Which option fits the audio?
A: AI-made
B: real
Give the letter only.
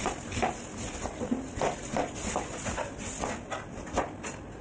B